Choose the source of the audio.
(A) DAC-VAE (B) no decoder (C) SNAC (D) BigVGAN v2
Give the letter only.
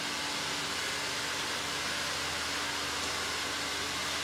B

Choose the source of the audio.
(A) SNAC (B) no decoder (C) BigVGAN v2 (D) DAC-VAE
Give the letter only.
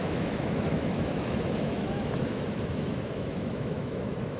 D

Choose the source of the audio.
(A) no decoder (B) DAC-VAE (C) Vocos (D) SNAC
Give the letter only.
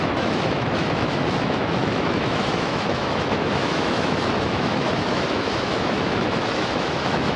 B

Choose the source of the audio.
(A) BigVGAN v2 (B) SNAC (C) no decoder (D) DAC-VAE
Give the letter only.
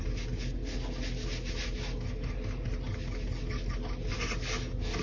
C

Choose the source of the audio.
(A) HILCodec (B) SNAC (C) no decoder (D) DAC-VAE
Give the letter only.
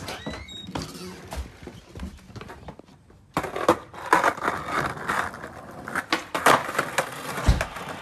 C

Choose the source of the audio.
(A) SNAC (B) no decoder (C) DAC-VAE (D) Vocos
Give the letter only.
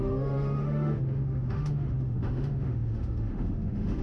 C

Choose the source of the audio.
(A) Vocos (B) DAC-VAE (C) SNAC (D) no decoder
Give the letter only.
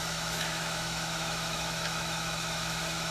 B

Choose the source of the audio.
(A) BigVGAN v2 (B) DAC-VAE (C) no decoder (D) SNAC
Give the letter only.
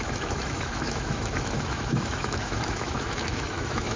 B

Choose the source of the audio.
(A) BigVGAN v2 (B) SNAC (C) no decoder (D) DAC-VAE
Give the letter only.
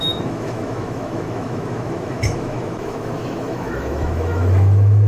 D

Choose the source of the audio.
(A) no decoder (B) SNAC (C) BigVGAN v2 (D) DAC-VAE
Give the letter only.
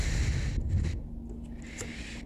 A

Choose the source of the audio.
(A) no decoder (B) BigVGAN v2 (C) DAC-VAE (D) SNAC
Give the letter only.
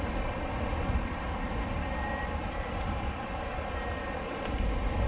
A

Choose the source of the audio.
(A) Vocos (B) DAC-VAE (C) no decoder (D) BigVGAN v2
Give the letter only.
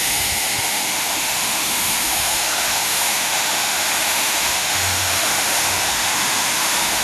B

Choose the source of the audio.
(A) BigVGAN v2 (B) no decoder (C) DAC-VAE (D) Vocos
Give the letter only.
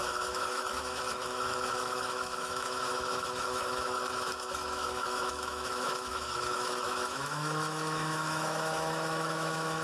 C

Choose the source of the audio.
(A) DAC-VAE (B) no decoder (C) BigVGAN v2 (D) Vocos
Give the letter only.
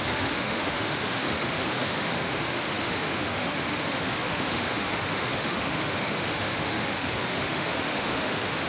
A